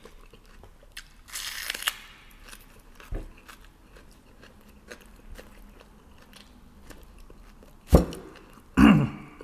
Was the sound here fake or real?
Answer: real